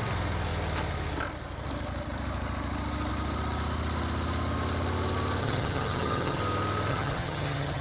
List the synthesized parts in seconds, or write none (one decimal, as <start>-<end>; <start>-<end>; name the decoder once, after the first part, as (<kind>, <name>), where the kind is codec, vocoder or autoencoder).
5.4-6.4 (vocoder, HiFi-GAN); 6.9-7.8

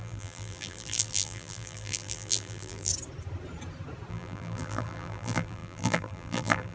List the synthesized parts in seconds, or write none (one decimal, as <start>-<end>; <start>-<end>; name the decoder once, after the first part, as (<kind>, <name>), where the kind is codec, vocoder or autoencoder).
0.0-2.9 (vocoder, BigVGAN v2); 4.1-6.7